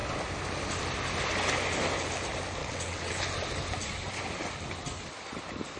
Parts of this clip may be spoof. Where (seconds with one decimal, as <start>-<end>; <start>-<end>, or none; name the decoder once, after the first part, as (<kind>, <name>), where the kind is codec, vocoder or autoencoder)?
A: 2.6-3.2 (vocoder, WaveNeXt)